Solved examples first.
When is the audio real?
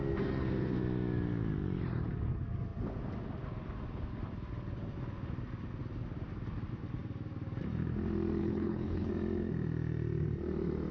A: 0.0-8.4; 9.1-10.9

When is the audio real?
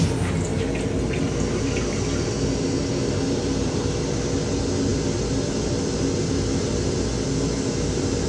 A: 0.0-8.3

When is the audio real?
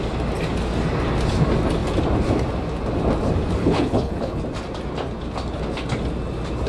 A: 0.0-3.6; 4.4-6.7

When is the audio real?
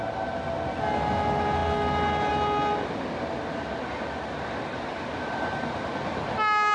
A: 0.0-6.7